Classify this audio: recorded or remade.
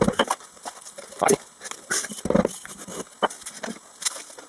recorded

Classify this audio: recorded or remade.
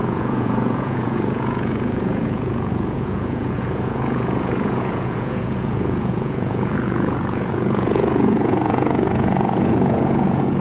remade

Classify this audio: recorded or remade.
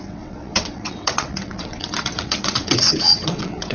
remade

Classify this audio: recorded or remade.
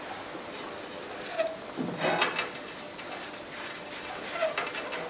recorded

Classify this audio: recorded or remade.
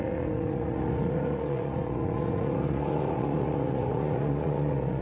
remade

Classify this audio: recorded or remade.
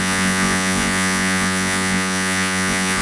remade